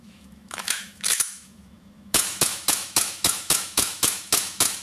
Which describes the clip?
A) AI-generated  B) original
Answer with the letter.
A